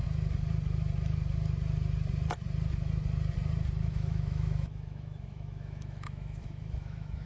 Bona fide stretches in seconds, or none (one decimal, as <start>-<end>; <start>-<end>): 0.0-3.8